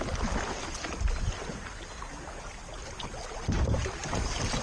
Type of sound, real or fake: real